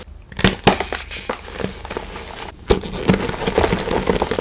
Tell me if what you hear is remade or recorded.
recorded